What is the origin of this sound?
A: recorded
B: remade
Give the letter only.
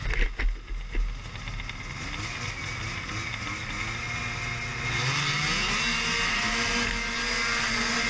A